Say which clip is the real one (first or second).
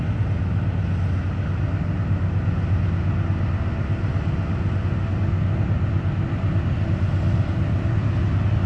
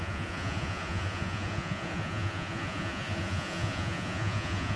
first